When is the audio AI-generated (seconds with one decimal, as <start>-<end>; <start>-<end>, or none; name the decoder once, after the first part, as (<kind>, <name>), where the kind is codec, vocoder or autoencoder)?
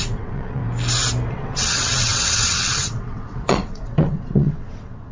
0.0-0.6 (vocoder, WaveNeXt); 1.3-5.1